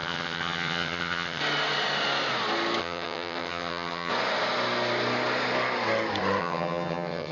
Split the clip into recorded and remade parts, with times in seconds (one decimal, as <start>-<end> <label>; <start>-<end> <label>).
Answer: 0.0-1.4 remade; 1.4-2.8 recorded; 2.8-4.1 remade; 4.1-6.4 recorded; 6.4-7.3 remade